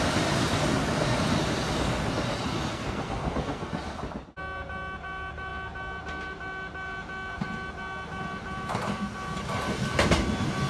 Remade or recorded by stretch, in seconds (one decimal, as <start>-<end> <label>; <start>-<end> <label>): 0.0-2.7 recorded; 2.7-3.8 remade; 3.8-10.7 recorded